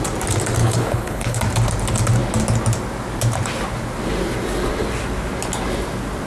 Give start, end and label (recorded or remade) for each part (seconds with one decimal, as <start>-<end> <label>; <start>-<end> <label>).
0.0-0.6 recorded; 0.6-1.4 remade; 1.4-6.3 recorded